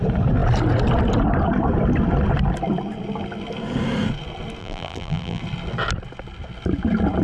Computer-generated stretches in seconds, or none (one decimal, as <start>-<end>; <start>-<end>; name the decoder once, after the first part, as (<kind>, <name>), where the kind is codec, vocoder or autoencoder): 4.6-5.4 (vocoder, BigVGAN v2)